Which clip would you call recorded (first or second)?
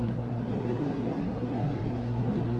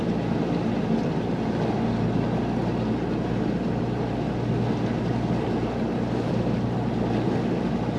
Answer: second